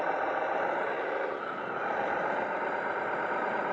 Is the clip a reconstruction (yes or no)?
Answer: yes